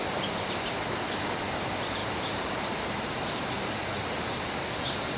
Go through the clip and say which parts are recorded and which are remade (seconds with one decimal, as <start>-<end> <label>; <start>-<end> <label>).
0.0-2.0 recorded; 2.0-4.4 remade; 4.4-5.2 recorded